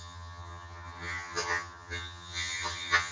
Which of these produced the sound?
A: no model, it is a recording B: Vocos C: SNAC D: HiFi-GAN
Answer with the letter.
D